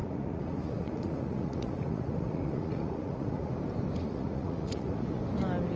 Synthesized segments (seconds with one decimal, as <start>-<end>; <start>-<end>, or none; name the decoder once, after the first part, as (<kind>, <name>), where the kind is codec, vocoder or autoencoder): 0.0-3.5 (vocoder, Vocos); 4.0-5.2